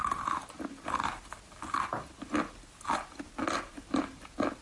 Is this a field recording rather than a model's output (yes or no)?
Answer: yes